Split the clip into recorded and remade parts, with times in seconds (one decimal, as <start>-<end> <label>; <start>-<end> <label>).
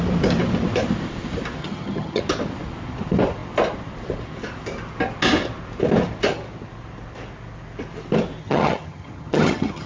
0.0-1.6 recorded; 1.6-2.2 remade; 2.2-8.4 recorded; 8.4-9.9 remade